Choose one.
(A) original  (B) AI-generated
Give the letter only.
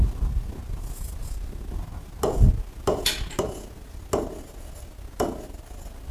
A